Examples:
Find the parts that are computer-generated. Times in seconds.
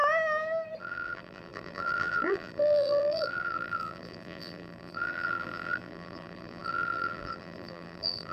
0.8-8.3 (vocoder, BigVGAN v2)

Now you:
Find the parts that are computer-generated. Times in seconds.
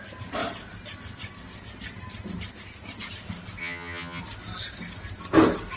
3.6-4.2 (vocoder, HiFi-GAN)